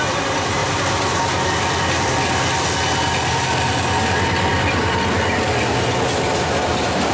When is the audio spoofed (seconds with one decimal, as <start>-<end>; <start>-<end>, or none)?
none